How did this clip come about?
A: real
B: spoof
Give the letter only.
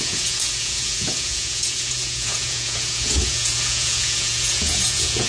B